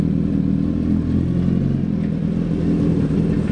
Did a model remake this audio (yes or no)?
no